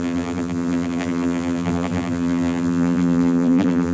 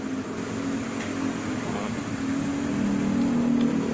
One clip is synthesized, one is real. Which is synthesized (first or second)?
first